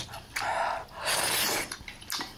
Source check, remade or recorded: recorded